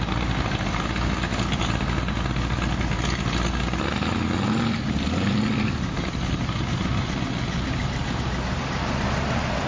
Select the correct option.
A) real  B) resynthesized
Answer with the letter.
A